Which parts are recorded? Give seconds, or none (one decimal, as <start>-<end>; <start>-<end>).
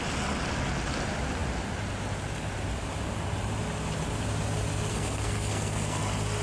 0.0-4.9; 6.0-6.4